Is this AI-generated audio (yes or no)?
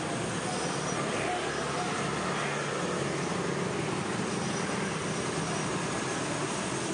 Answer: no